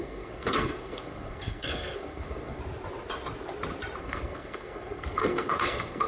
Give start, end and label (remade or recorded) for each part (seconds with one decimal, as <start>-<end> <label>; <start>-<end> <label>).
0.0-2.6 remade; 2.6-4.0 recorded; 4.0-6.1 remade